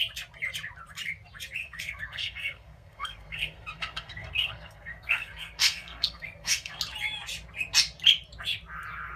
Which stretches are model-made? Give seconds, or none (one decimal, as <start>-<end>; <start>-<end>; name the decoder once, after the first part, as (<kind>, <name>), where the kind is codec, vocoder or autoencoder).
1.6-6.8 (codec, SNAC)